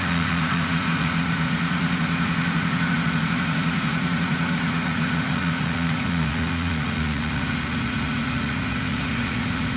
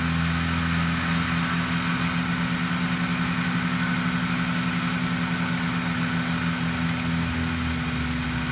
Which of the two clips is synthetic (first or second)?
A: first